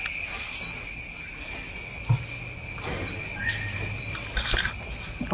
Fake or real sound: real